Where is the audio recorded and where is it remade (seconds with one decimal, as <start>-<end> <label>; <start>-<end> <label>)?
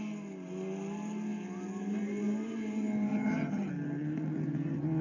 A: 0.0-3.1 recorded; 3.1-3.7 remade; 3.7-5.0 recorded